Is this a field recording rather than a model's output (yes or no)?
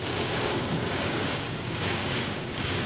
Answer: no